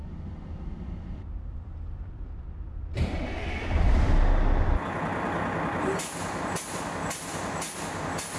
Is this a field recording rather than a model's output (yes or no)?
no